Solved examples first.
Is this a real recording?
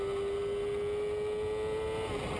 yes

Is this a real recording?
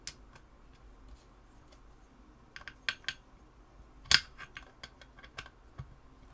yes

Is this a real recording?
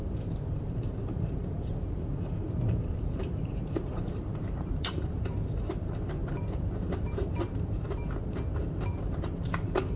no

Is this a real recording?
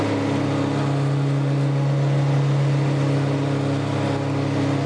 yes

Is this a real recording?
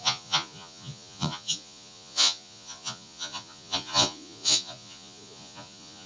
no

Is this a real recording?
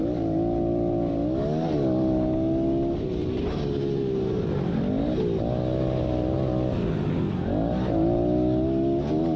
yes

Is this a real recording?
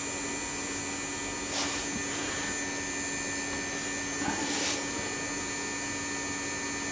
yes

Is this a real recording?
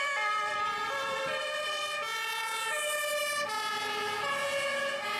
yes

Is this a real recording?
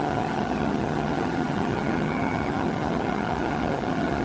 no